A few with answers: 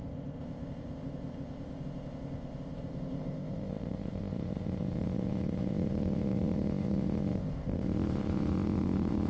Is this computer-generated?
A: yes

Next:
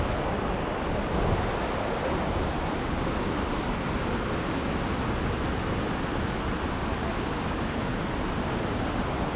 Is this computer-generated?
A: no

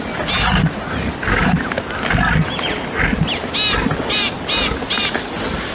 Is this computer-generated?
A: no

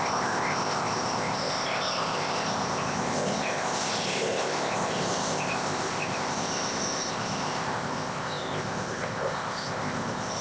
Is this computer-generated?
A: yes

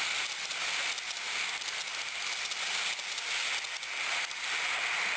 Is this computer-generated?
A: no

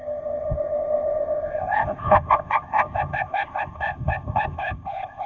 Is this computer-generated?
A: yes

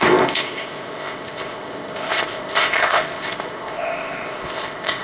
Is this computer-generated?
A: yes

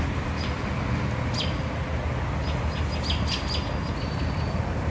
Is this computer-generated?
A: no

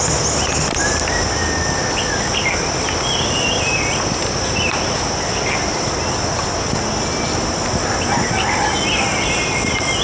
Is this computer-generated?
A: no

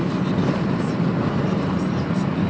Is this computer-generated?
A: no